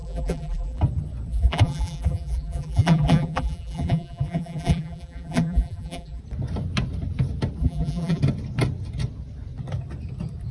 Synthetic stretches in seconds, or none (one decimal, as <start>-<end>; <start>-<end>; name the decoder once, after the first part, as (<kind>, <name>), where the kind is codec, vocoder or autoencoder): 0.0-0.8 (vocoder, BigVGAN v2); 1.3-6.2; 7.6-8.2